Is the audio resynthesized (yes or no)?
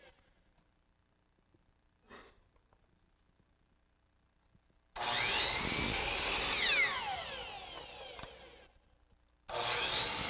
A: no